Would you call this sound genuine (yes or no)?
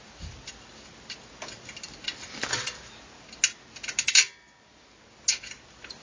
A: yes